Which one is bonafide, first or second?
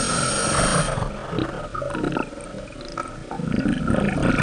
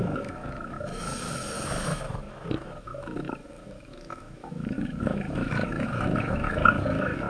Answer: first